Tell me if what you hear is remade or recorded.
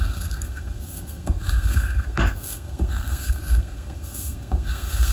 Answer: remade